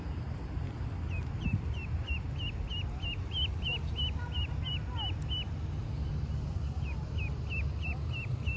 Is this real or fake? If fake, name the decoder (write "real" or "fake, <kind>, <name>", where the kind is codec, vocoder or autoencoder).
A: real